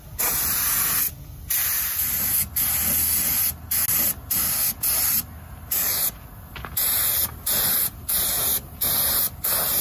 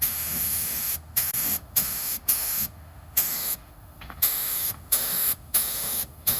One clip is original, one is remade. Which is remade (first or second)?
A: second